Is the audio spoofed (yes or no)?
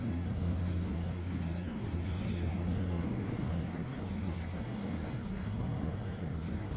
yes